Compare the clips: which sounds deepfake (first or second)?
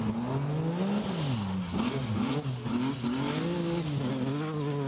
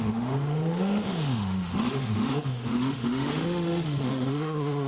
second